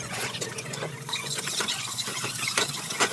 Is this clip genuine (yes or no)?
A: no